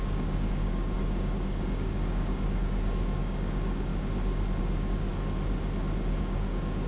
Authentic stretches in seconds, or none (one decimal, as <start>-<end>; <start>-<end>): 3.9-4.6; 5.1-6.2